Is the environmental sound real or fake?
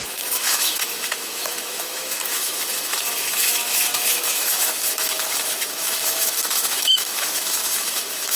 fake